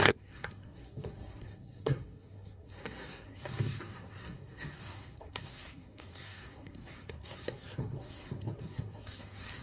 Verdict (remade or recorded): remade